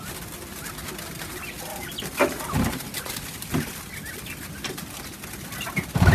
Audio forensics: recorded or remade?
recorded